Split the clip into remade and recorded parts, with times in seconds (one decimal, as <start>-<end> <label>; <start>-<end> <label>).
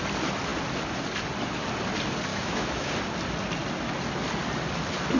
0.0-2.3 recorded; 2.3-2.9 remade; 2.9-5.2 recorded